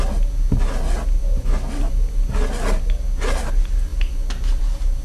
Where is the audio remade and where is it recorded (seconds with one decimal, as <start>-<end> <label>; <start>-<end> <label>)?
0.0-5.0 recorded